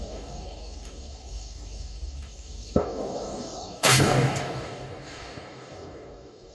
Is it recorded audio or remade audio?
remade